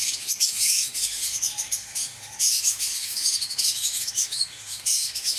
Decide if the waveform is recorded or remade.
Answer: remade